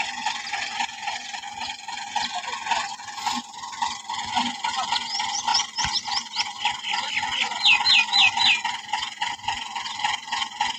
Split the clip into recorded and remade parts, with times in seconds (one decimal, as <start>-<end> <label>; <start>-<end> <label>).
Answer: 0.0-10.8 recorded